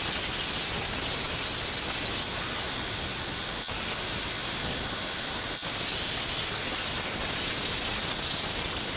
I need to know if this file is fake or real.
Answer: real